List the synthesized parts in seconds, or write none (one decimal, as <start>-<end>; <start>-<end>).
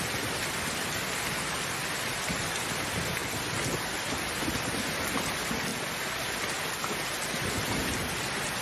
none